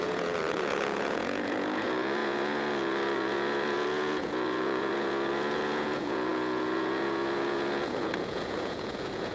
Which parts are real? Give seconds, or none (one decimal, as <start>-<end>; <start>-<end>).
none